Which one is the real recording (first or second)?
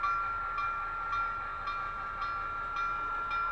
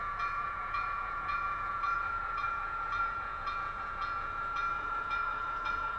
first